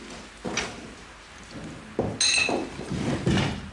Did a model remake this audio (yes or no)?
no